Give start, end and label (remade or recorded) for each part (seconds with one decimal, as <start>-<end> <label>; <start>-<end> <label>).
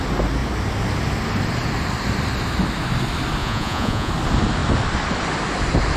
0.0-3.4 recorded; 3.4-4.1 remade; 4.1-6.0 recorded